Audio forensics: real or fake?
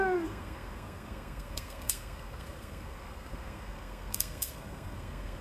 fake